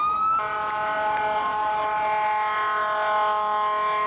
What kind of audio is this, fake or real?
real